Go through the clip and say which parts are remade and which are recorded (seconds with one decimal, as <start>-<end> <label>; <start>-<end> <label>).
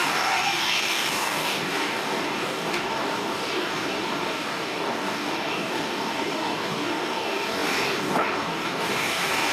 0.0-9.5 remade